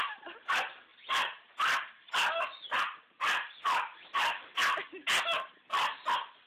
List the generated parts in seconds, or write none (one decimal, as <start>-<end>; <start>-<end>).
none